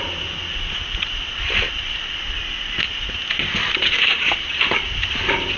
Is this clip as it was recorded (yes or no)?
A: yes